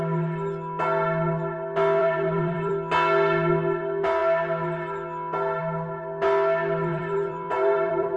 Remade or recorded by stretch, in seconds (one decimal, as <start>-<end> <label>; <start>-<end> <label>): 0.0-2.0 recorded; 2.0-2.7 remade; 2.7-6.9 recorded; 6.9-8.2 remade